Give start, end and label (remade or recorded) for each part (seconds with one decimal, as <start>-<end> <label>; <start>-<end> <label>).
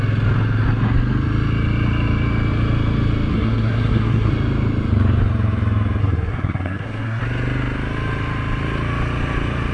0.0-3.3 recorded; 3.3-4.3 remade; 4.3-6.0 recorded; 6.0-7.2 remade; 7.2-9.7 recorded